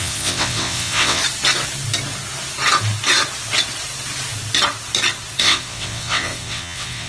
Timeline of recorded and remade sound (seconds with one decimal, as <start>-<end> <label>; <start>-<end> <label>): 0.0-1.2 remade; 1.2-5.4 recorded; 5.4-7.1 remade